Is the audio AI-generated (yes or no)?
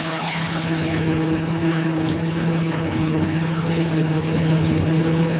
yes